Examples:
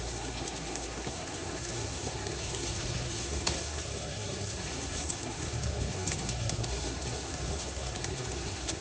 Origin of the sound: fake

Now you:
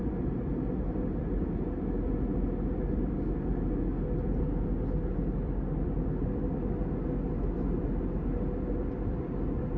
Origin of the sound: real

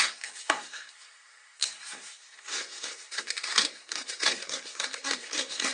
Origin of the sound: fake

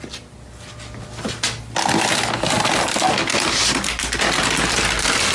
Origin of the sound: real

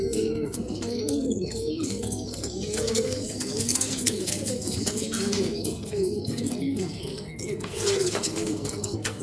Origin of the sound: fake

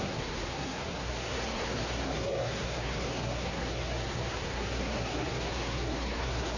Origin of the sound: fake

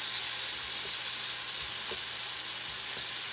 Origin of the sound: real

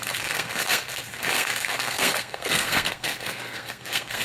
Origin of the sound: fake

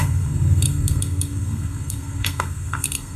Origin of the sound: fake